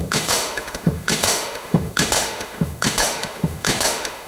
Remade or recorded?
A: remade